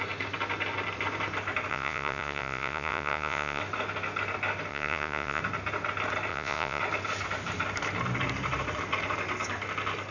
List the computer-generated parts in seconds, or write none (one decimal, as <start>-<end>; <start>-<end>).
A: 1.7-3.6; 4.7-5.4; 6.3-6.8